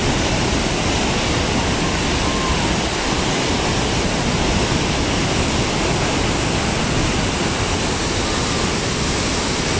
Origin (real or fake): real